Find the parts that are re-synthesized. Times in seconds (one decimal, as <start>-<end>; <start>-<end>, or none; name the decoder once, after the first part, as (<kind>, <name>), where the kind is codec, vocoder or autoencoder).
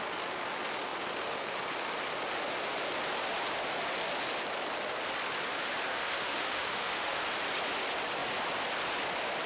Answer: 5.9-7.2 (autoencoder, DAC-VAE)